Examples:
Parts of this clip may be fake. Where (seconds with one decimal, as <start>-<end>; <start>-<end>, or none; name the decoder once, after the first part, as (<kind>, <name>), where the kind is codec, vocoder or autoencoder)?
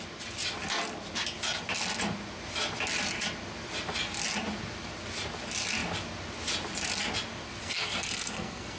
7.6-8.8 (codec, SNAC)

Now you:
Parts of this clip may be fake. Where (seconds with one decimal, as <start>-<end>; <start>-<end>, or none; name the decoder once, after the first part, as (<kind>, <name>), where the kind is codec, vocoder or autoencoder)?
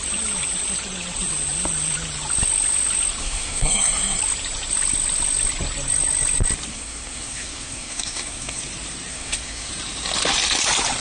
3.2-4.2 (codec, SNAC); 6.7-8.6; 9.1-9.7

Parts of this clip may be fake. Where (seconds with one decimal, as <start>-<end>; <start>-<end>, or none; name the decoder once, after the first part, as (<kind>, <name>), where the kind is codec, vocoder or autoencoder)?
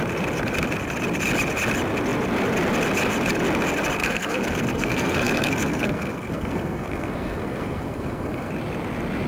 4.0-8.5 (codec, SNAC)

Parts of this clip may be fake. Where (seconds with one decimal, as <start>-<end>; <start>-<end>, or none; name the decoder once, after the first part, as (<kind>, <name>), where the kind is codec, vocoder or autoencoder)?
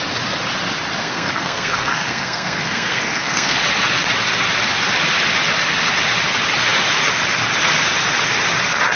1.0-3.6 (codec, SNAC)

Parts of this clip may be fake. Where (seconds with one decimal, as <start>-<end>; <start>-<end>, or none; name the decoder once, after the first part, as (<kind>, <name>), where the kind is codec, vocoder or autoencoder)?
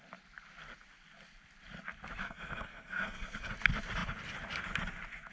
2.2-3.5 (codec, SNAC)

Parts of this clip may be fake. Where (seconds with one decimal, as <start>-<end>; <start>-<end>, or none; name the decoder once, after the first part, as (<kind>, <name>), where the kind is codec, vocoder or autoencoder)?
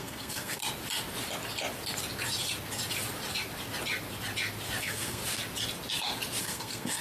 0.0-0.6 (codec, SNAC); 4.8-5.2; 6.4-7.0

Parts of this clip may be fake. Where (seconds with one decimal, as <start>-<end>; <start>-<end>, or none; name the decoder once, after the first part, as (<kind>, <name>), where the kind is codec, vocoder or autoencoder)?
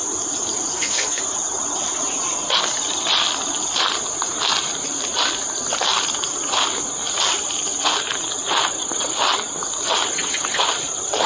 0.7-1.2 (codec, SNAC)